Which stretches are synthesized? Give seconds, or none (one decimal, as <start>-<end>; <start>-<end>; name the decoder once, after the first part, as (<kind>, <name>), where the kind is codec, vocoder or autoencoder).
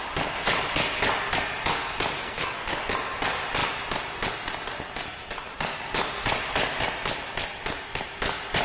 2.2-2.8 (codec, SNAC)